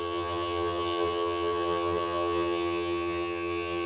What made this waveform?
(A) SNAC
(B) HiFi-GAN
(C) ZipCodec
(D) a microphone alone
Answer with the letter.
B